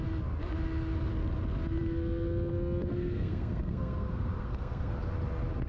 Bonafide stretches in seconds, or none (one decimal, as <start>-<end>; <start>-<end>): 0.0-2.9; 4.9-5.7